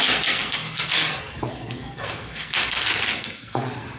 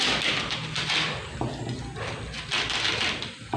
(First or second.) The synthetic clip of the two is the first